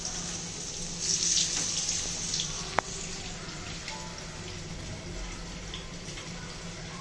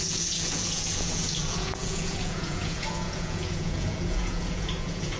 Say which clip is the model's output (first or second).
second